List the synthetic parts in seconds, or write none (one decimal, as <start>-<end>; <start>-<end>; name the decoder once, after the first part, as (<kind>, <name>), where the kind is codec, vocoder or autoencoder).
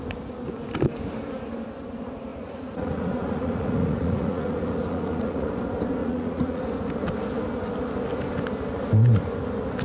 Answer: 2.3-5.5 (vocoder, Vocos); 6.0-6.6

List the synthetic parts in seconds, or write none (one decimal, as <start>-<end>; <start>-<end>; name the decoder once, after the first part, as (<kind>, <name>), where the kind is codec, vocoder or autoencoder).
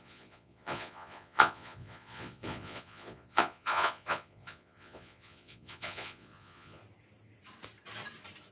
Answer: 0.0-6.8 (vocoder, Vocos)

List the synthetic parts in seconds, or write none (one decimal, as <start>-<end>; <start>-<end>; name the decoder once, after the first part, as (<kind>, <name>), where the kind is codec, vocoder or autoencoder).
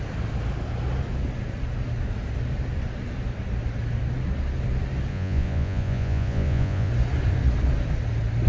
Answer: 5.1-6.9 (vocoder, Vocos)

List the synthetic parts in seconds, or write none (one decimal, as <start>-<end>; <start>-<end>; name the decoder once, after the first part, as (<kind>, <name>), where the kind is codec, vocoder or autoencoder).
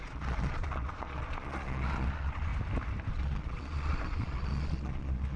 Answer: 0.0-2.5 (vocoder, Vocos); 3.1-5.4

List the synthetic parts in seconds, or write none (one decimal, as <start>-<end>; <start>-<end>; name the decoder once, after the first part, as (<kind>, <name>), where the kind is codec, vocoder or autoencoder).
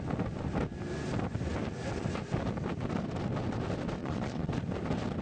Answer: 4.0-4.5 (vocoder, Vocos)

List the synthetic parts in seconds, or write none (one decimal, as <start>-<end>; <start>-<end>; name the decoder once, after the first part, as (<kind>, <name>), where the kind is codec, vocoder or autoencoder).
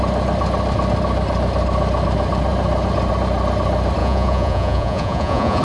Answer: 4.0-5.6 (vocoder, Vocos)